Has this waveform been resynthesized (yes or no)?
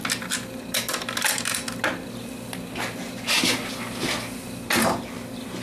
no